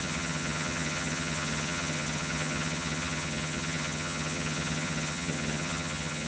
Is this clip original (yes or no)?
no